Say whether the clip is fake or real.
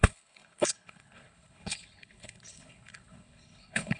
fake